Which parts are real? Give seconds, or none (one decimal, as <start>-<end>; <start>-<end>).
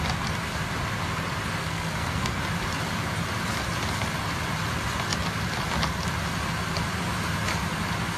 0.0-1.6; 2.4-8.2